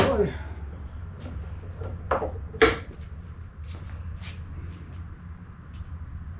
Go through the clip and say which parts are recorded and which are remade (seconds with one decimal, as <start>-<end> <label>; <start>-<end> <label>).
0.0-1.9 recorded; 1.9-2.9 remade; 2.9-6.4 recorded